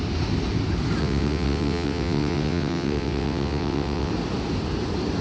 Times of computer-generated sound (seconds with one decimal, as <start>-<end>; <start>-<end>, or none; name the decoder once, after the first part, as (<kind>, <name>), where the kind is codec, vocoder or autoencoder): 1.0-4.1 (vocoder, WaveNeXt)